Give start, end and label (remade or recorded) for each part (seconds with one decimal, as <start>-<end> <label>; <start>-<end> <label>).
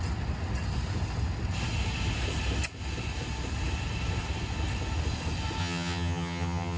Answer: 0.0-5.6 recorded; 5.6-6.8 remade